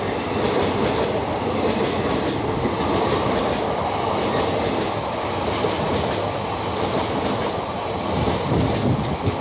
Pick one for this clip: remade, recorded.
recorded